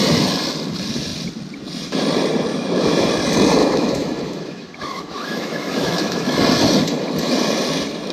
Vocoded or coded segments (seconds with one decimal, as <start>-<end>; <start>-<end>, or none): 2.5-3.1; 3.6-6.4